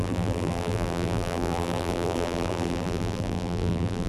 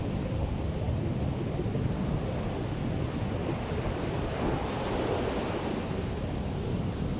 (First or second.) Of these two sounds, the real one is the second